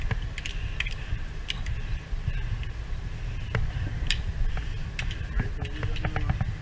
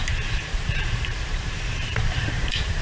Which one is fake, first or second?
second